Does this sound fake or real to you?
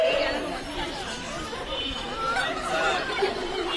fake